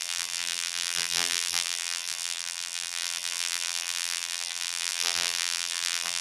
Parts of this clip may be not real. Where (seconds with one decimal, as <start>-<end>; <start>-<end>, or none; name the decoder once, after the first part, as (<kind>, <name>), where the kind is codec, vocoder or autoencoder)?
0.0-6.2 (vocoder, BigVGAN v2)